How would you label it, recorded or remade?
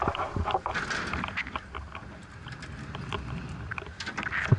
recorded